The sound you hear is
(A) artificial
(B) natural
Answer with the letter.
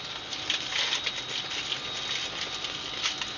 B